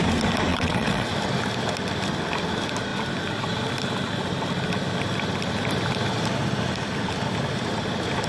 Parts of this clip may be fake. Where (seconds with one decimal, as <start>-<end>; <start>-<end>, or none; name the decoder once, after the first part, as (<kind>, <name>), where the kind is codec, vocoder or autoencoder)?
0.5-1.1 (vocoder, WaveNeXt)